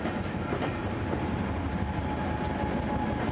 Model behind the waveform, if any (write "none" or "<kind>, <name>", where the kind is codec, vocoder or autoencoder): none